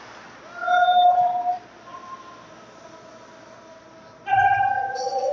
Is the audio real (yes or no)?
yes